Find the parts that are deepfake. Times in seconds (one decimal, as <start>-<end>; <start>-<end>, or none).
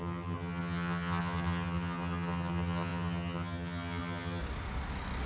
0.0-4.4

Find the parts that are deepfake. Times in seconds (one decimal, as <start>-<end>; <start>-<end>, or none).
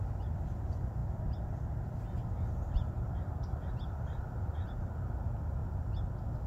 none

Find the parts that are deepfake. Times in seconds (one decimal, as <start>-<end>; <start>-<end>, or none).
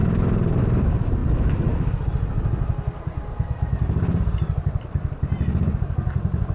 none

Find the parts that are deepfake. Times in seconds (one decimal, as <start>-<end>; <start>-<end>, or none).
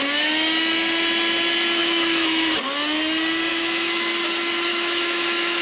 1.8-2.5; 3.5-4.1; 4.7-5.6